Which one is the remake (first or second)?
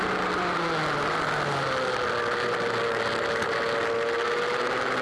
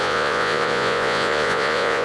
second